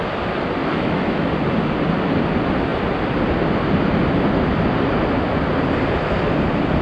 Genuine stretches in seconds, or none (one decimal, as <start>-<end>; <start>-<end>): 0.0-0.6; 1.3-6.8

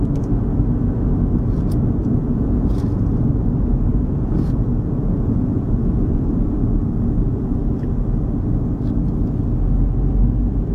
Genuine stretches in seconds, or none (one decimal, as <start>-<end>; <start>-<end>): 0.0-2.0; 3.3-3.9; 7.6-10.7

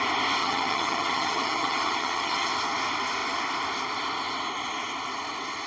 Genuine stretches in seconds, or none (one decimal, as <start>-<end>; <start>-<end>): 0.0-0.4; 2.5-5.7

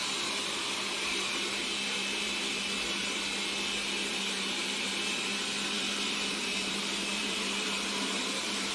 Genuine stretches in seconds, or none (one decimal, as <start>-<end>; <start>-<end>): 2.6-4.1

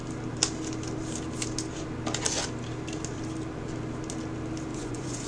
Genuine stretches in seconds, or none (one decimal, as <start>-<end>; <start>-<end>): 0.0-4.7

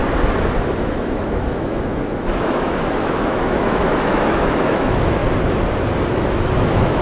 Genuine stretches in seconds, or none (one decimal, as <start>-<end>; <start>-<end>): 0.0-0.7; 5.2-6.1